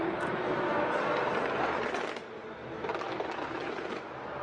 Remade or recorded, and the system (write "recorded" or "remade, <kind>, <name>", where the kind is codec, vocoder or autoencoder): recorded